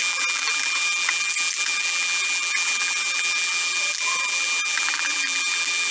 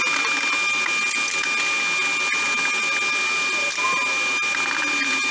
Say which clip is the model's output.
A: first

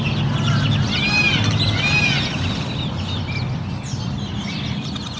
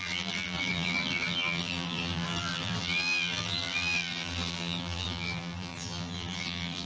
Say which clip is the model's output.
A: second